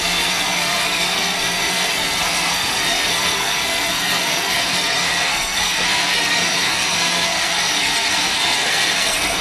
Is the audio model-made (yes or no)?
yes